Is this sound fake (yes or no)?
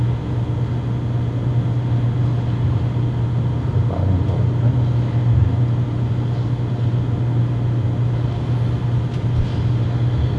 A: no